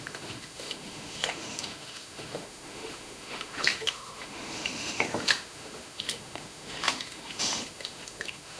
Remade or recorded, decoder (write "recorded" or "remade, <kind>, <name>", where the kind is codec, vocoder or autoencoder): remade, autoencoder, DAC-VAE